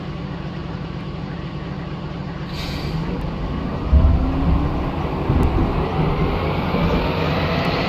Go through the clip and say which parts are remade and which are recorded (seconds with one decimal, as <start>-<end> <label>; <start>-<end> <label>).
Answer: 0.0-0.6 recorded; 0.6-1.5 remade; 1.5-7.9 recorded